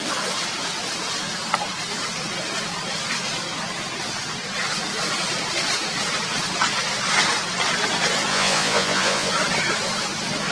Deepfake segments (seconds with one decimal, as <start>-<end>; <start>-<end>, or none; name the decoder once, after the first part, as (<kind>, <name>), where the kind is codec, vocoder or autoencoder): 8.3-9.3 (vocoder, Vocos)